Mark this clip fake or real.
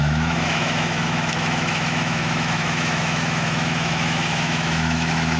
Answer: fake